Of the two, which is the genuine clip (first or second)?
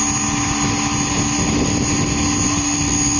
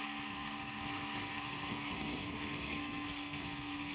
first